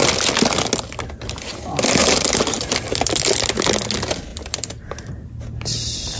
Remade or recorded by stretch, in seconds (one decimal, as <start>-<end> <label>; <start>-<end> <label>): 0.0-2.0 recorded; 2.0-2.7 remade; 2.7-4.3 recorded; 4.3-5.3 remade; 5.3-6.2 recorded